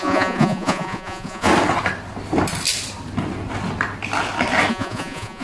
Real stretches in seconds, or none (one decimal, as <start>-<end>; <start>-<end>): 1.5-4.7